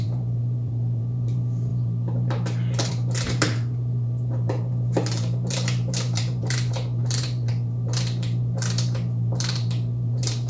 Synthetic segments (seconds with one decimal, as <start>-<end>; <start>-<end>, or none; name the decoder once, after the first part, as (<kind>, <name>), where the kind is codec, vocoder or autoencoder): 0.0-10.5 (vocoder, BigVGAN v2)